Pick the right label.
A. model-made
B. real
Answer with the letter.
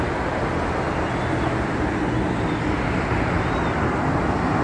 B